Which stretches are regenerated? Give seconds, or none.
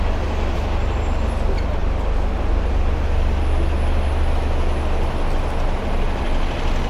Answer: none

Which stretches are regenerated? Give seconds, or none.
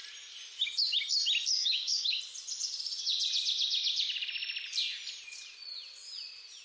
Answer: 1.6-2.2 (codec, DAC)